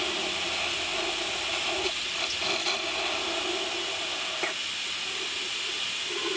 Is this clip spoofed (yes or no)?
no